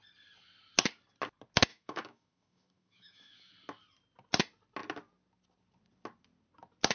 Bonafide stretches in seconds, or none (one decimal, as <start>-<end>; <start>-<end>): 0.0-1.7; 3.5-6.9